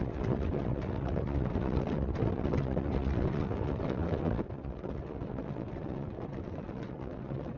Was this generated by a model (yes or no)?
yes